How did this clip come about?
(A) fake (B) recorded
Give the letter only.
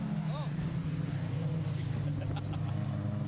B